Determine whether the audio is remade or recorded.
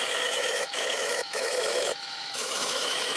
remade